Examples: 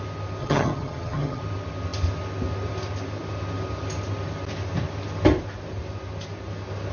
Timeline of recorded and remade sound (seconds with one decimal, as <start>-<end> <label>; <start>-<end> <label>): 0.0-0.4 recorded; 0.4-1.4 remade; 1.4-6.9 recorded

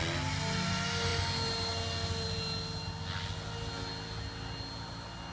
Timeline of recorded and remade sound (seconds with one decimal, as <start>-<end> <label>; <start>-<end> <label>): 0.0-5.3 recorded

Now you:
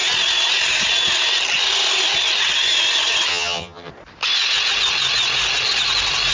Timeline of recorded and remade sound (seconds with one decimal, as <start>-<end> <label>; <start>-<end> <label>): 0.0-3.3 recorded; 3.3-3.9 remade; 3.9-6.3 recorded

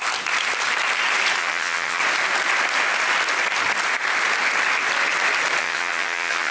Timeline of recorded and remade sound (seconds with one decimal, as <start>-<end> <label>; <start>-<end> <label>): 0.0-1.4 recorded; 1.4-2.0 remade; 2.0-5.6 recorded; 5.6-6.5 remade